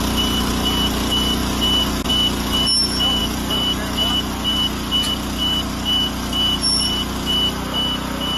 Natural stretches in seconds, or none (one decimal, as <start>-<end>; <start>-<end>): 0.0-8.4